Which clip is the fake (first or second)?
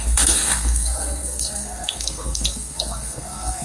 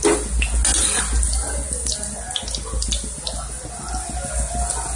first